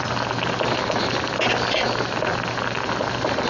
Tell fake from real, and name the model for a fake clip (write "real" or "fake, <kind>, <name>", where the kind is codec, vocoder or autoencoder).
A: real